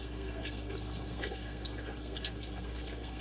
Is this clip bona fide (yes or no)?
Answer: no